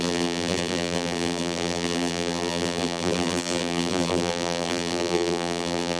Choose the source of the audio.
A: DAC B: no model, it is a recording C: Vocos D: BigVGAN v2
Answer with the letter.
D